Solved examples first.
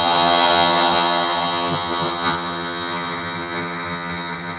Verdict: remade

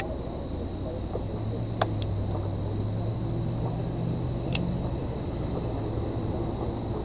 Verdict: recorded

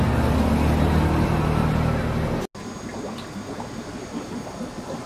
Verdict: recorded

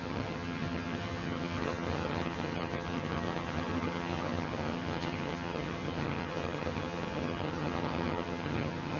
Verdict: remade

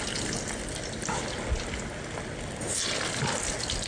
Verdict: recorded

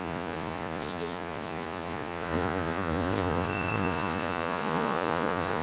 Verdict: remade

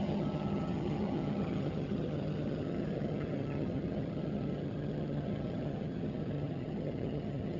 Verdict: remade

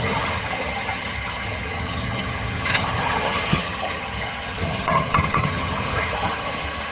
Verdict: remade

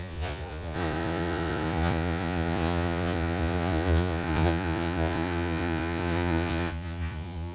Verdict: remade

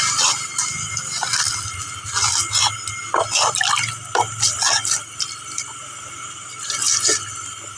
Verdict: recorded